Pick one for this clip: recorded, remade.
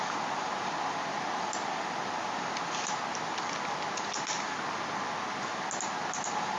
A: recorded